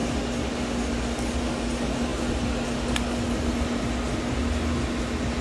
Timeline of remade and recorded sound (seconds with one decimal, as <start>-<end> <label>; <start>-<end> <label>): 0.0-5.4 recorded